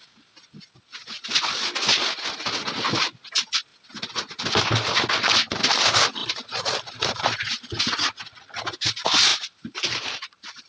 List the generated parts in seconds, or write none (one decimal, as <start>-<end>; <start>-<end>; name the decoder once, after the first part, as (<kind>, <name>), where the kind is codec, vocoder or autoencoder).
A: 6.2-7.8 (vocoder, BigVGAN v2); 9.3-10.7